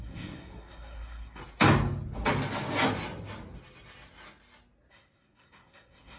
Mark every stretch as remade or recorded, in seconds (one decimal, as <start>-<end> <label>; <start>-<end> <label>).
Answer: 0.0-1.4 remade; 1.4-4.9 recorded; 4.9-6.2 remade

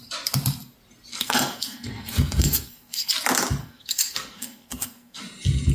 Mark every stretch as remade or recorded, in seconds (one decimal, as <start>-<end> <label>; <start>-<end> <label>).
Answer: 0.0-1.1 recorded; 1.1-3.1 remade; 3.1-3.6 recorded; 3.6-5.2 remade; 5.2-5.7 recorded

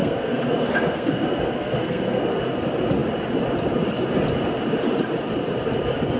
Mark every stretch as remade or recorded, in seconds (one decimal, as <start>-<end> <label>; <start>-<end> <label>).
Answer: 0.0-2.3 remade; 2.3-6.2 recorded

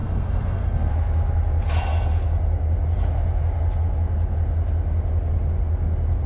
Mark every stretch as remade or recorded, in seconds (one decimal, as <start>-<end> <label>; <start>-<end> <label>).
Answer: 0.0-0.9 remade; 0.9-6.3 recorded

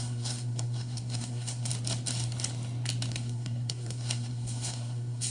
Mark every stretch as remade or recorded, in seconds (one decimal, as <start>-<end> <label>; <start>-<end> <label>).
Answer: 0.0-1.7 remade; 1.7-3.1 recorded; 3.1-5.3 remade

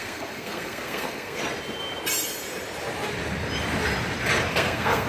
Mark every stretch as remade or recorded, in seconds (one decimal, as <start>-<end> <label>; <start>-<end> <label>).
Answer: 0.0-1.4 remade; 1.4-4.5 recorded; 4.5-5.1 remade